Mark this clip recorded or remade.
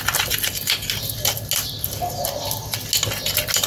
recorded